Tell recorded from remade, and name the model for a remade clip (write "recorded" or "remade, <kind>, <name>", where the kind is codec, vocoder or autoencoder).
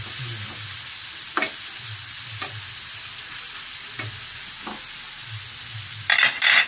recorded